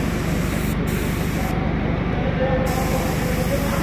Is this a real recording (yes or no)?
yes